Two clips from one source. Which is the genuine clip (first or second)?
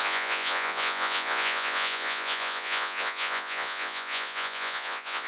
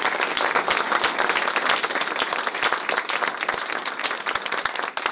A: second